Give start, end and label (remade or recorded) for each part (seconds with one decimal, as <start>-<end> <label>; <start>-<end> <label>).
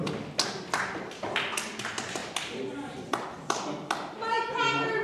0.0-5.0 recorded